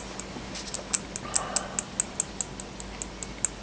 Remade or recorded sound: recorded